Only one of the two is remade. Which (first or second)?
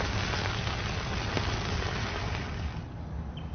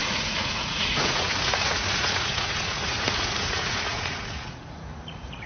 second